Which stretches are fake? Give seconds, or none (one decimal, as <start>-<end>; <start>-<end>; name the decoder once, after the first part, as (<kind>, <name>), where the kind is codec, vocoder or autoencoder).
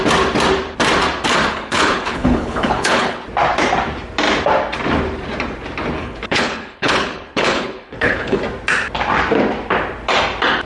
1.5-3.2 (codec, HILCodec); 6.0-8.4